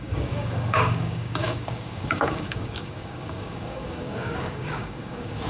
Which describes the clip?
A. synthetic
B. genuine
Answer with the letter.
A